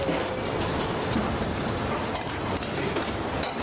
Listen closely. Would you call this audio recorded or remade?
recorded